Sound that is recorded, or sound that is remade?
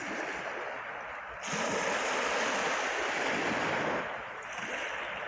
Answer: recorded